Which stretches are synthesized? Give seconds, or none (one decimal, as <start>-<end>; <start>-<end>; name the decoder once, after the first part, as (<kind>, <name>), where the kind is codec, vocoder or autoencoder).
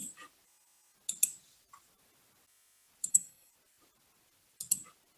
3.1-3.5 (codec, SNAC)